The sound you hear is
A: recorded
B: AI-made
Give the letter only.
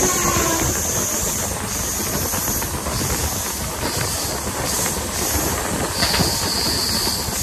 A